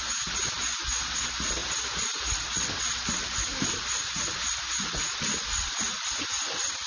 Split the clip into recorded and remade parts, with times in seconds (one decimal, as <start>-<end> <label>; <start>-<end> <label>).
0.0-6.9 recorded

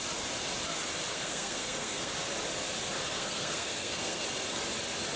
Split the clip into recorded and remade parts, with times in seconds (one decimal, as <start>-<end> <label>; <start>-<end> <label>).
0.0-1.1 recorded; 1.1-2.1 remade; 2.1-3.1 recorded; 3.1-4.2 remade; 4.2-5.2 recorded

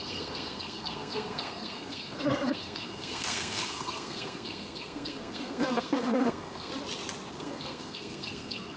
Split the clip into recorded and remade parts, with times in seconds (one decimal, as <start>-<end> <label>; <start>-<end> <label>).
0.0-6.7 remade; 6.7-7.3 recorded; 7.3-8.8 remade